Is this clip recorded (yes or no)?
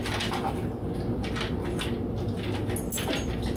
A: yes